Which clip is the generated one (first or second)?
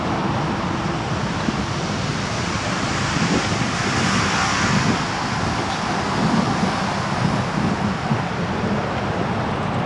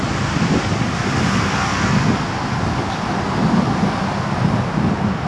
first